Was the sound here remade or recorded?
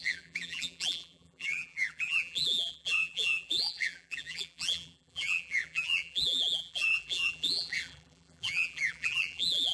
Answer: remade